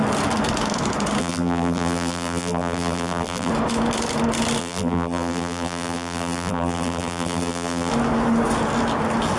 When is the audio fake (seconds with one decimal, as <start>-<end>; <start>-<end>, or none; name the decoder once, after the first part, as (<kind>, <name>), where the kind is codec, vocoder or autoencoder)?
1.2-3.5 (vocoder, BigVGAN v2); 4.6-7.9